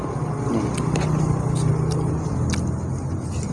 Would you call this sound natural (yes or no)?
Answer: yes